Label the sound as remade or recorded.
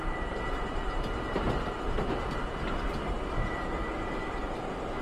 recorded